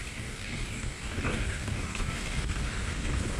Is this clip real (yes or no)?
no